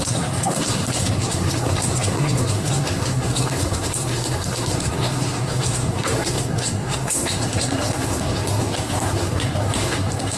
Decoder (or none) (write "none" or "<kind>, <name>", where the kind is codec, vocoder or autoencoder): codec, SNAC